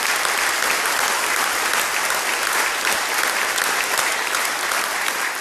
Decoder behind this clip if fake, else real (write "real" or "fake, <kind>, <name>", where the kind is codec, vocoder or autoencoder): real